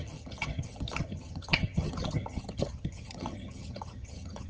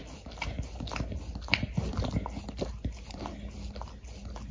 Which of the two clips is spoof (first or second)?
first